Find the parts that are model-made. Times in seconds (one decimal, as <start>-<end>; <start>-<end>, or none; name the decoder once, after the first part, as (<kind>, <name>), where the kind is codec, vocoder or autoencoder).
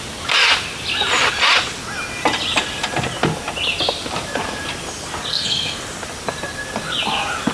5.3-5.8 (codec, SNAC)